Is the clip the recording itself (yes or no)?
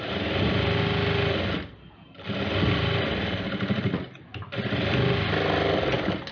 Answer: yes